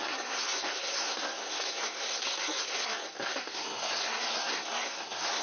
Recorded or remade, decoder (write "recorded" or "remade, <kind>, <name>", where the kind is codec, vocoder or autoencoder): remade, codec, SNAC